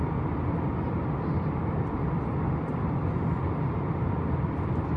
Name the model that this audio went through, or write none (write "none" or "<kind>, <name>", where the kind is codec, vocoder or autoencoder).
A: none